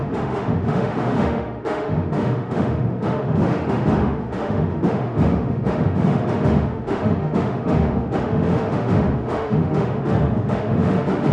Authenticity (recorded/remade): remade